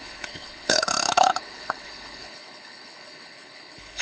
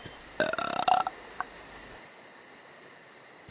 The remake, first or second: first